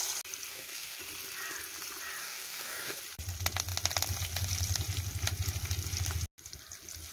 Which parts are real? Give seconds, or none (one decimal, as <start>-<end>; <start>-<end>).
0.0-0.5; 1.0-2.2; 3.0-7.1